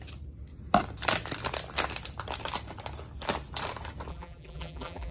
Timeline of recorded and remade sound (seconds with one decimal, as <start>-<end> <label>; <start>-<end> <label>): 0.0-4.1 recorded; 4.1-5.1 remade